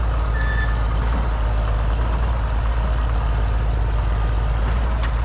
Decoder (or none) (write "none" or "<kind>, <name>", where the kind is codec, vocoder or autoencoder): none